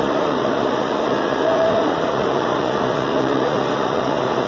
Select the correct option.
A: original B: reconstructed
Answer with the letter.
B